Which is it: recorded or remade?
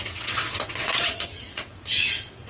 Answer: remade